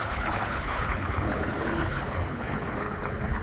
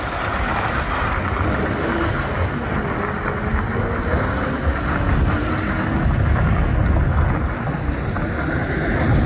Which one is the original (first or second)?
second